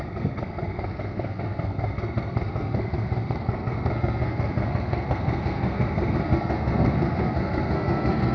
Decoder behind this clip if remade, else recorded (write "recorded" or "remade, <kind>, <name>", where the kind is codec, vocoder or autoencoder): remade, codec, SNAC